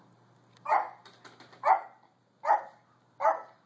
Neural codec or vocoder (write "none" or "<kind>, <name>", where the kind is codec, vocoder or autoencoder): none